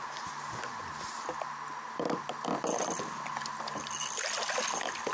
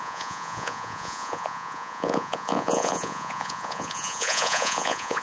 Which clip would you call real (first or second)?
first